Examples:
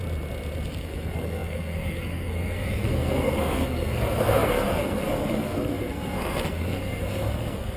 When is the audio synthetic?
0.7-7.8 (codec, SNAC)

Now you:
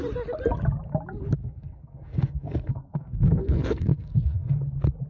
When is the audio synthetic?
1.4-4.5 (codec, SNAC)

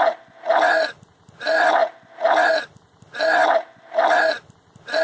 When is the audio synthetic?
none

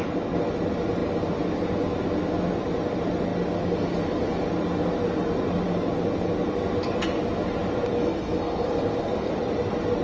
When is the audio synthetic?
8.0-9.3 (codec, SNAC)